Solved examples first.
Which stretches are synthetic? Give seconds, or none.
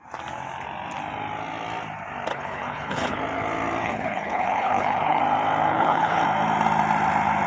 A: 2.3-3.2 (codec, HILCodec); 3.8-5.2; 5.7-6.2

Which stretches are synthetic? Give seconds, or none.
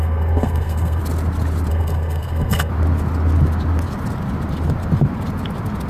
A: 0.0-1.0 (codec, SNAC); 1.7-2.7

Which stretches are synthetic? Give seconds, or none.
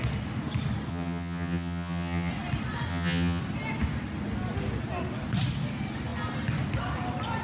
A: 0.9-2.3 (vocoder, HiFi-GAN); 2.9-3.4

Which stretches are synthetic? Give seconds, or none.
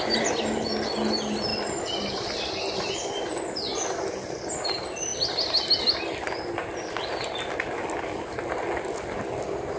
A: 1.5-2.9 (vocoder, BigVGAN v2)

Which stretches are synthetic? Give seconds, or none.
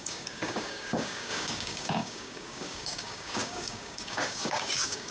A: 0.0-5.1 (codec, DAC)